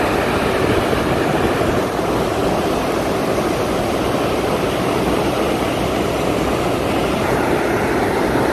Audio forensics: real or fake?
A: fake